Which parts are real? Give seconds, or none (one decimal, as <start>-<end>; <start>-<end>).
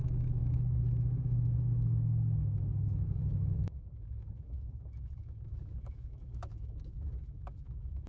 none